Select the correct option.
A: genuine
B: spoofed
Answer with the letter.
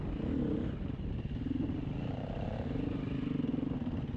A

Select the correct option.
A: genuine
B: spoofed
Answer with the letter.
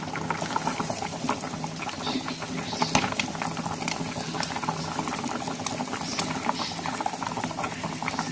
B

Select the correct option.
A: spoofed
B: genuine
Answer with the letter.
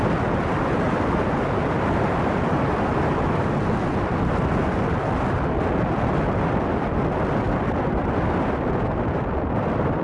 B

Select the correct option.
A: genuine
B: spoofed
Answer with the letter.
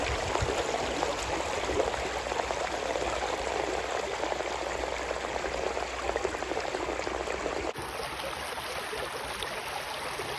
A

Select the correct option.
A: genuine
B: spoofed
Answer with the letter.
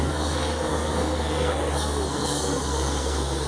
B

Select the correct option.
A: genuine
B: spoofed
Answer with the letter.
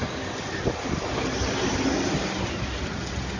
A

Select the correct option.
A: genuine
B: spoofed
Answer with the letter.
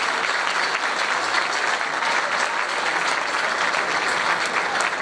A